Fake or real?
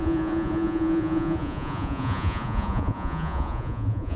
fake